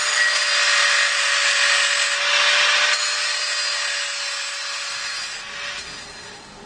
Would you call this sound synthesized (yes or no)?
no